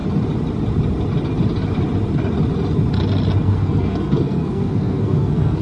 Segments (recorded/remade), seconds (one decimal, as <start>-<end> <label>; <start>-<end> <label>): 0.0-3.4 recorded; 3.4-5.6 remade

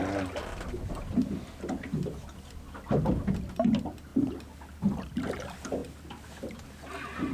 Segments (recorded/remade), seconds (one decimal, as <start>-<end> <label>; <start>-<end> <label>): 0.0-7.3 recorded

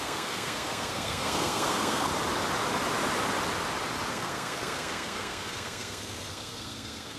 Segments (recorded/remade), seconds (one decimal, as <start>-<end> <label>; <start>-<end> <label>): 0.0-2.1 remade; 2.1-4.1 recorded; 4.1-7.2 remade

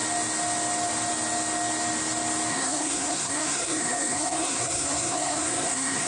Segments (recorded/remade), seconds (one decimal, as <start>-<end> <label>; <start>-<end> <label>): 0.0-2.5 recorded; 2.5-6.1 remade